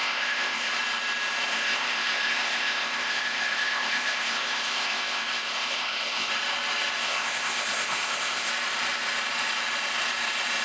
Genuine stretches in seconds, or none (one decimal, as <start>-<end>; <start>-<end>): 0.7-1.5; 6.3-7.0; 8.5-10.6